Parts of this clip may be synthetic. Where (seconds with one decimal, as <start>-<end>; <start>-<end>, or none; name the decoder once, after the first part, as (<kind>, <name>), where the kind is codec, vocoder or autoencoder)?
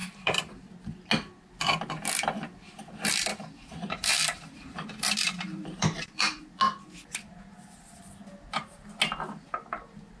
0.0-0.7 (vocoder, BigVGAN v2); 3.3-6.5